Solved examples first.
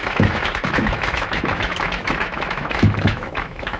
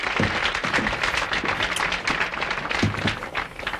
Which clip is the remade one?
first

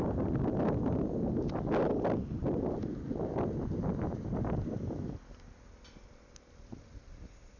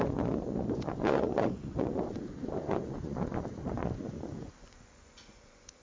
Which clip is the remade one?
second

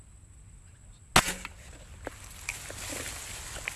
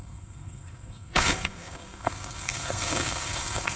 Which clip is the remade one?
second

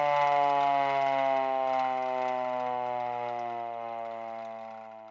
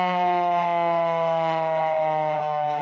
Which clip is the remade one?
second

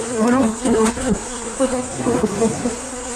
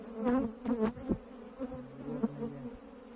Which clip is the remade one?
first